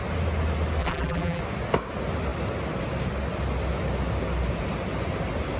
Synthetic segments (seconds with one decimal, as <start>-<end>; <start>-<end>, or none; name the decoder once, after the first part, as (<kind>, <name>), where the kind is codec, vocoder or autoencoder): 0.8-1.4 (vocoder, BigVGAN v2)